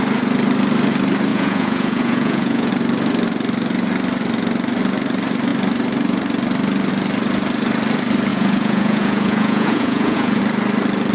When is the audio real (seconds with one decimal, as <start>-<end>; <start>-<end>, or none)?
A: 0.0-1.3; 2.7-8.3; 10.4-11.1